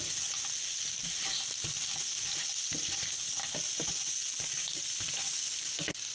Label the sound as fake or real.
real